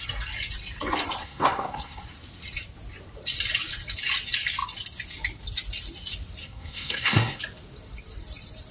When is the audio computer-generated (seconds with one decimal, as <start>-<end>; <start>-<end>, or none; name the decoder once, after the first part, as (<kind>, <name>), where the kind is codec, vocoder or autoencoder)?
1.2-2.0 (codec, SNAC); 6.4-7.4